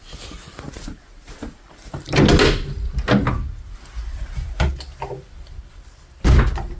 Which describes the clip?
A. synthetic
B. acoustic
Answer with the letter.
B